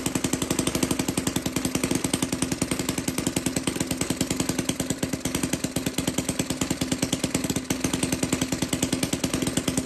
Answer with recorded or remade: recorded